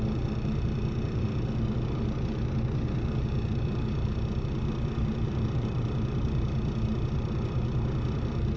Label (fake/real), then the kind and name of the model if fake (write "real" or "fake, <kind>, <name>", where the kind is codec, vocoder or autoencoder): fake, vocoder, BigVGAN v2